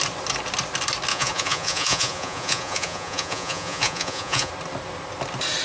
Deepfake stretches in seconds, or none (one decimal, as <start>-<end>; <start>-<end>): 1.1-4.5